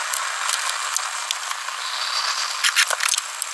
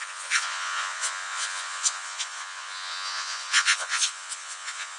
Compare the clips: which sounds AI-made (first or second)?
second